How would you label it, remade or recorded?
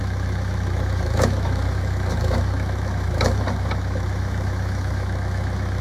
remade